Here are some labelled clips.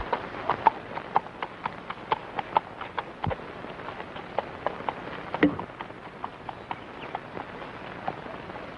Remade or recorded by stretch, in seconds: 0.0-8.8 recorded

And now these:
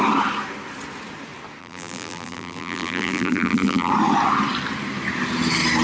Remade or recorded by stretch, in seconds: 0.0-1.6 recorded; 1.6-3.9 remade; 3.9-5.8 recorded

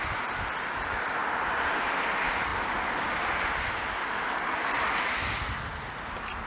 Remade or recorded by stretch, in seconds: 0.0-1.2 recorded; 1.2-2.0 remade; 2.0-6.5 recorded

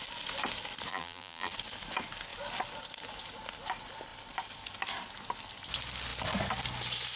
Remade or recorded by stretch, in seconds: 0.0-0.9 recorded; 0.9-1.5 remade; 1.5-7.2 recorded

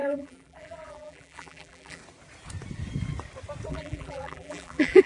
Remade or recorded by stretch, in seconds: 0.0-2.0 remade; 2.0-3.7 recorded; 3.7-5.1 remade